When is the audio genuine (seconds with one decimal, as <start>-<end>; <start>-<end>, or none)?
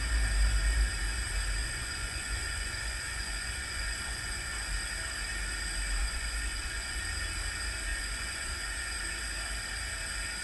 0.0-1.6; 4.7-6.0; 7.0-7.9; 9.0-10.4